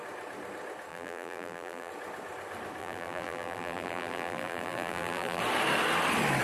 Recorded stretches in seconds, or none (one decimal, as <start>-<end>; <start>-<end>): 0.0-0.9; 1.9-2.8; 5.4-6.4